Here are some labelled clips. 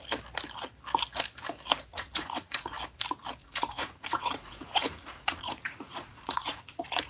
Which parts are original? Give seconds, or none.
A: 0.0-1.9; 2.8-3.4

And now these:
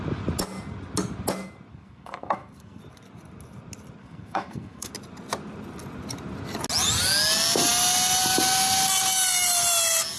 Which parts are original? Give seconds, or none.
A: 0.0-1.7; 2.8-4.0; 4.9-10.2

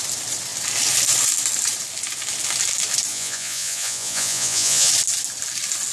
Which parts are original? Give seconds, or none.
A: 0.0-3.1; 4.9-5.9